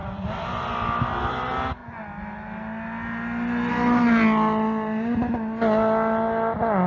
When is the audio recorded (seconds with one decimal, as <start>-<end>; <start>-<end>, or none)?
0.0-6.9